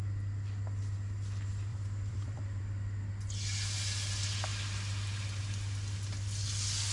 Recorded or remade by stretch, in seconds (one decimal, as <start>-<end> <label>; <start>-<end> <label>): 0.0-1.7 recorded; 1.7-2.6 remade; 2.6-6.9 recorded